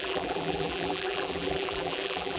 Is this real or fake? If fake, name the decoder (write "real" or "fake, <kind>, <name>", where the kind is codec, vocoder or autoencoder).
fake, vocoder, BigVGAN v2